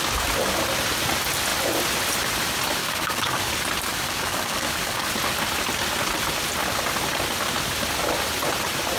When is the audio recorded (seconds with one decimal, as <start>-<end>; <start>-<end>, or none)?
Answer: 0.0-2.8; 3.5-3.9; 5.1-9.0